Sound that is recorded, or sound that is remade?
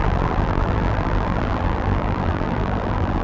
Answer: remade